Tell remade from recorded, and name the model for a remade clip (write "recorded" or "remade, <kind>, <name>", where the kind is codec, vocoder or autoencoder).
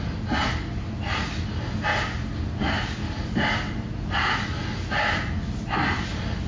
recorded